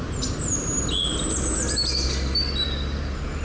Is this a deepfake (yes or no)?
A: no